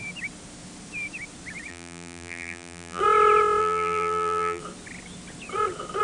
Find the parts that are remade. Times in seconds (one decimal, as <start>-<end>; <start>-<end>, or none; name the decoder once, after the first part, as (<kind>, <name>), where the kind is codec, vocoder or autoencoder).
1.7-3.0 (vocoder, BigVGAN v2); 3.6-4.6